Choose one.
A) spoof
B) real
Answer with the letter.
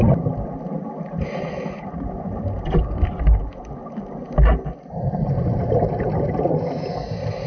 B